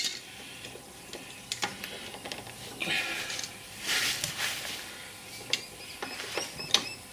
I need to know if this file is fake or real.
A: real